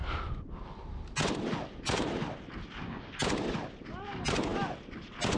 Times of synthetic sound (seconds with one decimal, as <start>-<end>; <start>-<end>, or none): none